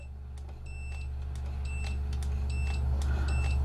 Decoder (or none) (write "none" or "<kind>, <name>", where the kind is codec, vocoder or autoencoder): none